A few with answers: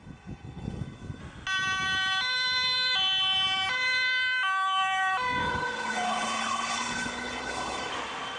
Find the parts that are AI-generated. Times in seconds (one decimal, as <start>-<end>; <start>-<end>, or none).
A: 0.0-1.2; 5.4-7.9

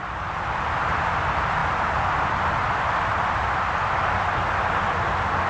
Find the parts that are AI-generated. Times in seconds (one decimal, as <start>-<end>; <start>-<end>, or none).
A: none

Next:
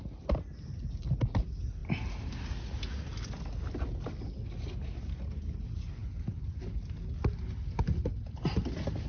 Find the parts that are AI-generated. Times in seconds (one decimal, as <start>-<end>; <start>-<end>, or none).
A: none

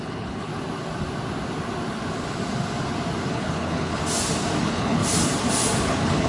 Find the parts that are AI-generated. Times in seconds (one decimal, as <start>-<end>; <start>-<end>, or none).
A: 0.0-0.5; 3.3-4.0; 4.6-5.0; 5.8-6.3

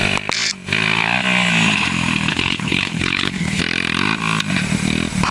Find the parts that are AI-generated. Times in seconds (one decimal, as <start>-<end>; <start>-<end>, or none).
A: 2.3-3.6